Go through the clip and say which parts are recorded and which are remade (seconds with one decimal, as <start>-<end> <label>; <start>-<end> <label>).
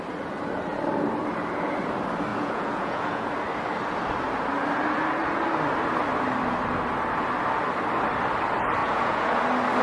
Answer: 0.0-2.3 recorded; 2.3-3.3 remade; 3.3-8.8 recorded; 8.8-9.4 remade; 9.4-9.8 recorded